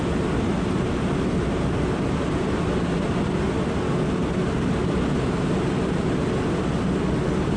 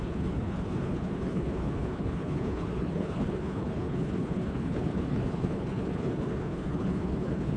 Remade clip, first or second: second